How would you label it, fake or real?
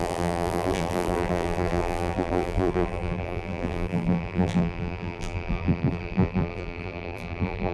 fake